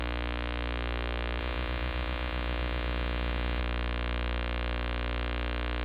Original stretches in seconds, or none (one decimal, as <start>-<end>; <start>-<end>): 0.0-1.4; 3.6-5.8